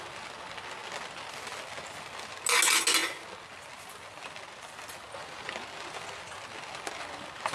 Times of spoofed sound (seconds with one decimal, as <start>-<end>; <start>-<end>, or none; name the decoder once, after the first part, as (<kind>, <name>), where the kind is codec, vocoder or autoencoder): none